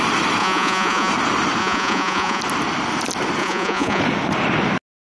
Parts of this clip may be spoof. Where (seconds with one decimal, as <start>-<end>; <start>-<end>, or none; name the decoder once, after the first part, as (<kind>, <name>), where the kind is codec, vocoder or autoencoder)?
0.4-1.1 (vocoder, Vocos); 1.6-2.4; 3.4-4.0